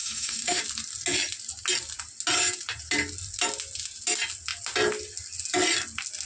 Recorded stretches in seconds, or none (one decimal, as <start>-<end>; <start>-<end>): 0.6-6.3